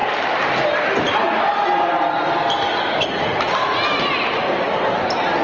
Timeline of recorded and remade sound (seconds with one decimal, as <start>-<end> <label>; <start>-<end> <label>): 0.0-5.4 recorded